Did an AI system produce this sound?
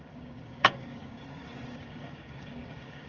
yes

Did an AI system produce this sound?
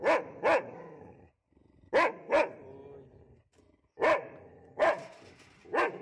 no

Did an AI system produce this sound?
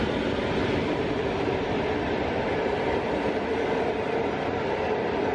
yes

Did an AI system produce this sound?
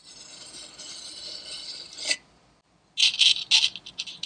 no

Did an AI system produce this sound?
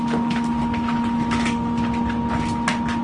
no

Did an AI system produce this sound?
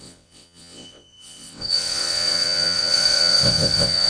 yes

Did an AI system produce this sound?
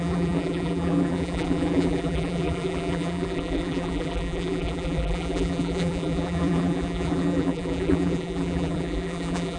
yes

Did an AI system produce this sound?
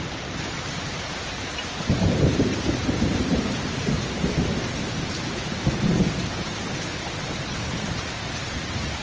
yes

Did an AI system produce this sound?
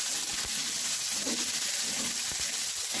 no